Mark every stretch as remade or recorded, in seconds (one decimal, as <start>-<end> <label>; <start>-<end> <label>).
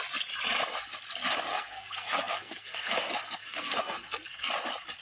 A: 0.0-1.5 recorded; 1.5-4.5 remade; 4.5-5.0 recorded